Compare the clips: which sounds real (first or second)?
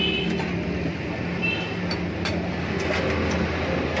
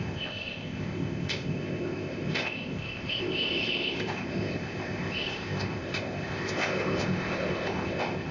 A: first